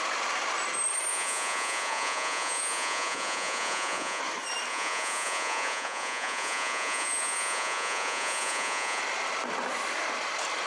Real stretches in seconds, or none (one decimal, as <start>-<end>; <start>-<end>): 0.0-1.1; 4.2-4.7; 9.0-10.7